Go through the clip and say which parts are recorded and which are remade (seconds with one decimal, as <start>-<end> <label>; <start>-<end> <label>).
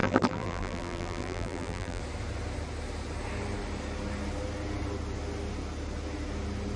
0.0-2.0 remade; 2.0-6.8 recorded